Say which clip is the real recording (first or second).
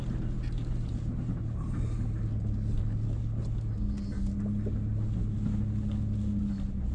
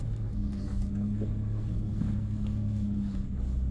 first